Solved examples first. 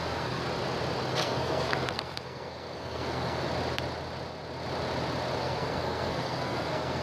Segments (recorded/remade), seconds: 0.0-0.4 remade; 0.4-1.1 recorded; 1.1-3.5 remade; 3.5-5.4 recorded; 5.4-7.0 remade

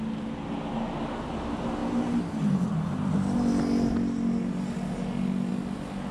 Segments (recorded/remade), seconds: 0.0-6.1 recorded

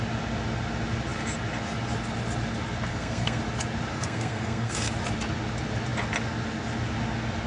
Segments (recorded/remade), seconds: 0.0-2.9 recorded; 2.9-3.4 remade; 3.4-3.9 recorded; 3.9-4.9 remade; 4.9-7.5 recorded

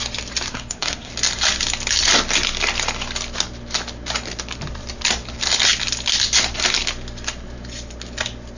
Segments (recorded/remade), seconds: 0.0-0.5 recorded; 0.5-1.1 remade; 1.1-8.6 recorded

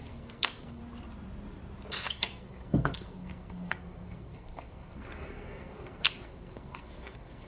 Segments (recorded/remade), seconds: 0.0-0.8 remade; 0.8-1.9 recorded; 1.9-7.5 remade

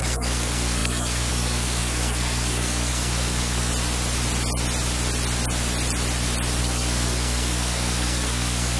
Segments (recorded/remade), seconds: 0.0-3.7 remade; 3.7-6.6 recorded; 6.6-8.8 remade

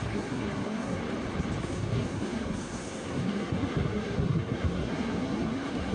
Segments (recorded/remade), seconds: 0.0-1.0 remade; 1.0-1.6 recorded; 1.6-5.9 remade